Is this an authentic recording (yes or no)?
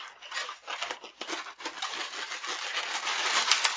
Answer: yes